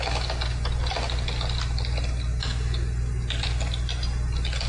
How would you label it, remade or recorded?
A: recorded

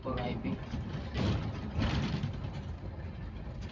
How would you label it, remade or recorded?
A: recorded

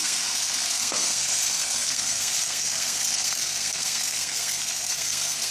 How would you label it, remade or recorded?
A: remade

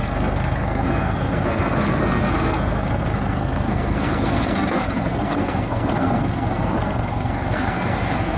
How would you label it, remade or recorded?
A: remade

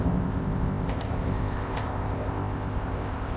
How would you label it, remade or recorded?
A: remade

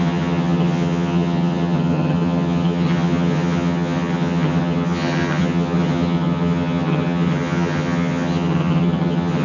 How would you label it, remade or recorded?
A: remade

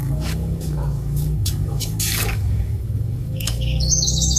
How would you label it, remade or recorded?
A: remade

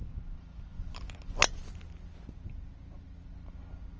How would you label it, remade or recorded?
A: recorded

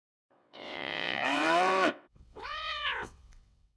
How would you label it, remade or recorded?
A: remade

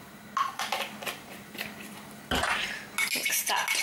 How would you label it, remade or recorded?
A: recorded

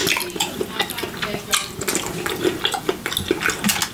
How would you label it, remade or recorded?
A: recorded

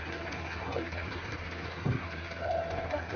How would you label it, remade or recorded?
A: remade